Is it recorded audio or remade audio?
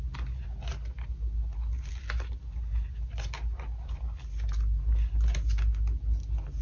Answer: recorded